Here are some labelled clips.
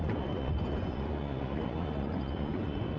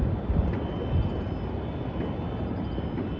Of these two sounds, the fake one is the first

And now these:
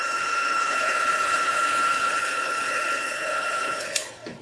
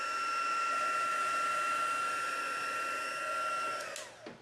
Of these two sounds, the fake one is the first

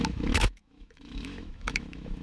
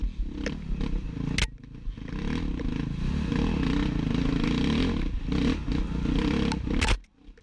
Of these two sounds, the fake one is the first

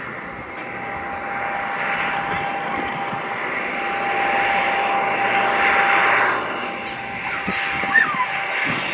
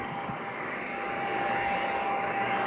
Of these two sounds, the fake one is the second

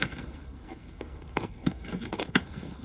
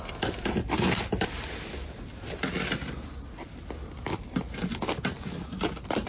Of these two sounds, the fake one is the first